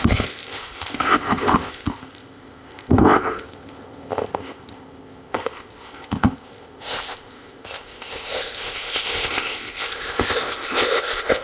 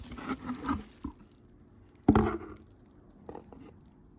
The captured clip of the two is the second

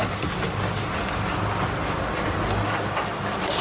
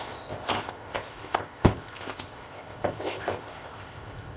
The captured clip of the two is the first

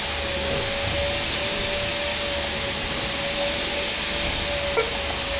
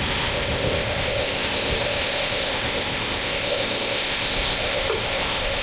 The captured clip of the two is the first